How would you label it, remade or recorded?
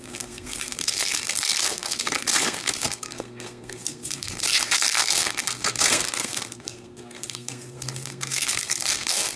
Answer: remade